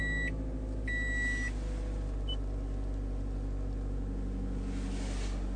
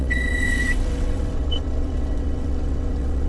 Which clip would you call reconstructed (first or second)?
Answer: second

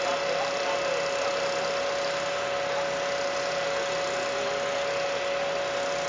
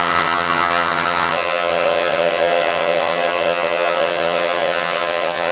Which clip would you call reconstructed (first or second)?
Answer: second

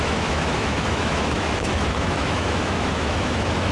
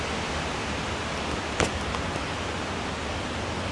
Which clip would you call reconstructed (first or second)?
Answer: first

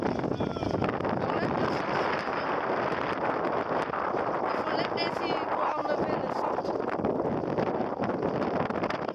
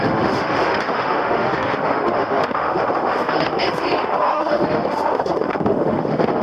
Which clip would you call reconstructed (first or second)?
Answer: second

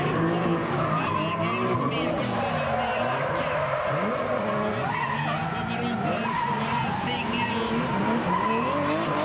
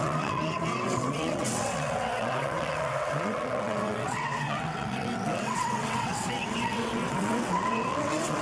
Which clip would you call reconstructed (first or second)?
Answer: second